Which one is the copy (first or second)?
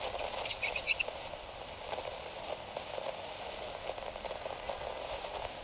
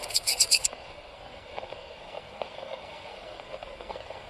second